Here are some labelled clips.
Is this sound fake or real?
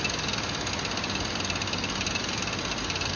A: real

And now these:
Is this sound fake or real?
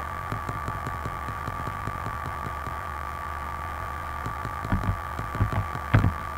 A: fake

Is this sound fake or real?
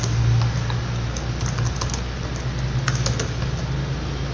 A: real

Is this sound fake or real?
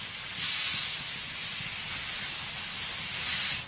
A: real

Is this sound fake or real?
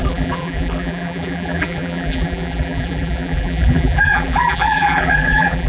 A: fake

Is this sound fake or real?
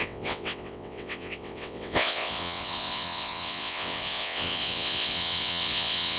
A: fake